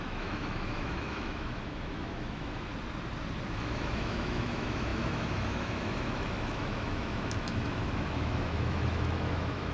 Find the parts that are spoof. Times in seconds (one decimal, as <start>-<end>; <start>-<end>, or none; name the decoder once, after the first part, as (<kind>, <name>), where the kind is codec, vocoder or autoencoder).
0.0-2.7 (autoencoder, DAC-VAE); 3.5-9.7